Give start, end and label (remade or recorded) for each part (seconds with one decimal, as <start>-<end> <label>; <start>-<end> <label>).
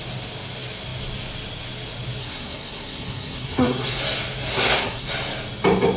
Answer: 0.0-2.2 recorded; 2.2-4.0 remade; 4.0-4.5 recorded; 4.5-5.1 remade; 5.1-6.0 recorded